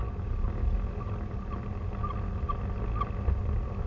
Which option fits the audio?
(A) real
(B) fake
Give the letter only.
A